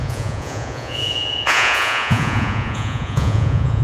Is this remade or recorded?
remade